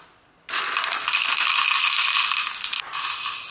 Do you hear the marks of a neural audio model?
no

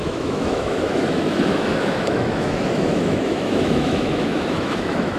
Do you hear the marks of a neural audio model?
yes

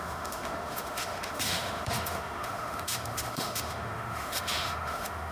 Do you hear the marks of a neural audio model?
yes